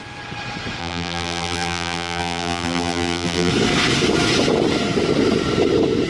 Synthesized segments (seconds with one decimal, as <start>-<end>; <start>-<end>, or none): 0.8-3.5